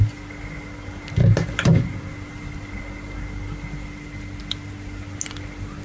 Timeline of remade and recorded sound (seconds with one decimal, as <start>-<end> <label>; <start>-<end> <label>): 0.0-5.8 recorded